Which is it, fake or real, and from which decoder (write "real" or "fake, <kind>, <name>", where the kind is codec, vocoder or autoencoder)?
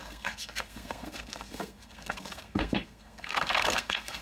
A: fake, codec, SNAC